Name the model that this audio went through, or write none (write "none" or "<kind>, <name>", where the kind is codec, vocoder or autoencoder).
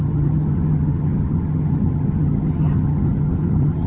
vocoder, HiFi-GAN